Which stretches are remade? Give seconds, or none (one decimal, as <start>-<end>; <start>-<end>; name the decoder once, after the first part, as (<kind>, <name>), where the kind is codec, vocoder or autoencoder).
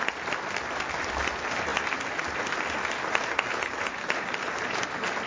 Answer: none